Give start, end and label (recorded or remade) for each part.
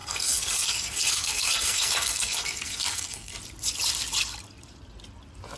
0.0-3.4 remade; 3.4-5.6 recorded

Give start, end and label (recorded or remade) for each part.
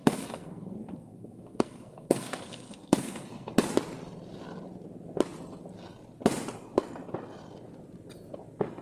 0.0-3.5 remade; 3.5-8.8 recorded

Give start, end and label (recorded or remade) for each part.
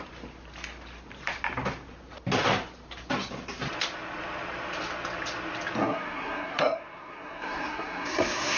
0.0-5.8 recorded; 5.8-8.6 remade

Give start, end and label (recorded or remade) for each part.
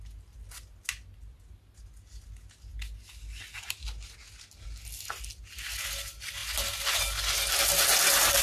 0.0-8.4 recorded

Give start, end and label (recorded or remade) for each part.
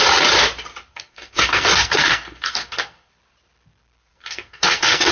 0.0-0.9 recorded; 0.9-3.1 remade; 3.1-4.1 recorded; 4.1-5.1 remade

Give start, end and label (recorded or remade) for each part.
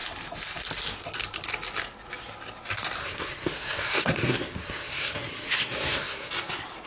0.0-3.0 recorded; 3.0-6.3 remade; 6.3-6.9 recorded